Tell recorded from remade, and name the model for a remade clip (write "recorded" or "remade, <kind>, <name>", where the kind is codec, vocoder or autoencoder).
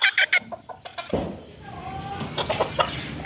recorded